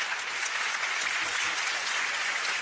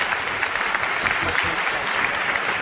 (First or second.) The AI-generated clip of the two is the first